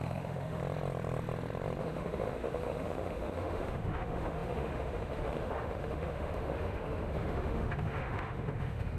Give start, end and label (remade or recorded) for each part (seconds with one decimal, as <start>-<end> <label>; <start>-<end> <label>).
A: 0.0-0.6 remade; 0.6-1.8 recorded; 1.8-9.0 remade